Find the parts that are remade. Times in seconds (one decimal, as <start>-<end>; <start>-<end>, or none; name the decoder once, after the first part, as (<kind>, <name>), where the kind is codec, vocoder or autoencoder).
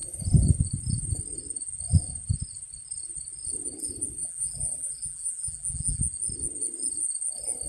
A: 4.2-6.0 (vocoder, BigVGAN v2)